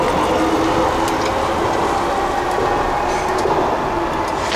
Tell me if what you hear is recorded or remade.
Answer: recorded